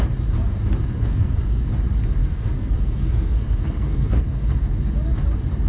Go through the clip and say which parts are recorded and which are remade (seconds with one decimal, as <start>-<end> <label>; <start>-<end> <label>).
0.0-1.0 recorded; 1.0-1.6 remade; 1.6-2.2 recorded; 2.2-4.6 remade; 4.6-5.7 recorded